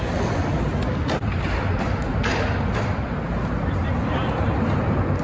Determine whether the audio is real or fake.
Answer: real